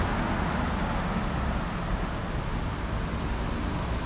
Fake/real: real